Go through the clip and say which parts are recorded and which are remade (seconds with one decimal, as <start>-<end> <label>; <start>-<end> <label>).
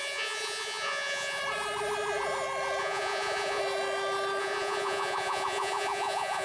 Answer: 0.0-1.4 remade; 1.4-2.8 recorded; 2.8-3.6 remade; 3.6-4.4 recorded; 4.4-6.4 remade